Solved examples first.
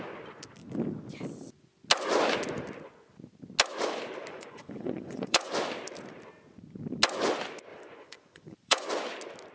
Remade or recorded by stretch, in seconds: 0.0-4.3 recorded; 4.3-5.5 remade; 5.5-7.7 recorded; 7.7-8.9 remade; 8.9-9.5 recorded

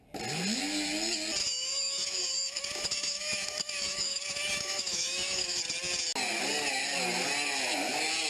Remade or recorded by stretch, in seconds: 0.0-1.4 recorded; 1.4-5.6 remade; 5.6-8.3 recorded

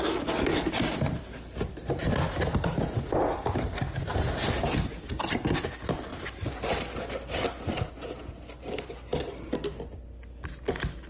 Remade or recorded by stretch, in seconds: 0.0-11.1 recorded

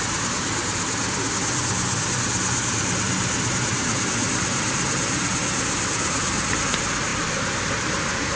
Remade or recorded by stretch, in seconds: 0.0-1.0 remade; 1.0-2.7 recorded; 2.7-5.4 remade; 5.4-6.1 recorded; 6.1-8.4 remade